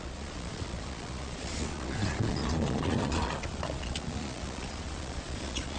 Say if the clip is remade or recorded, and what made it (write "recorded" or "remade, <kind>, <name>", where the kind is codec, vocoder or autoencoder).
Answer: remade, vocoder, Vocos